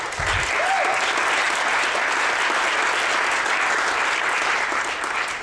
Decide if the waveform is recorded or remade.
recorded